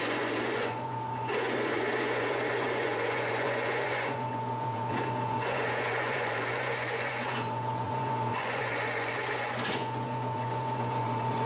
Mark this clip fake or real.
fake